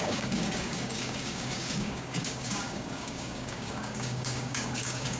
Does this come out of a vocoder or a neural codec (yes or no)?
yes